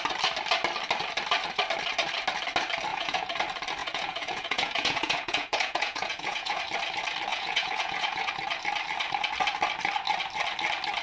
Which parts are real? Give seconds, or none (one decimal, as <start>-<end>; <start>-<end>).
0.0-2.9; 3.4-3.8; 6.6-7.3; 8.3-11.0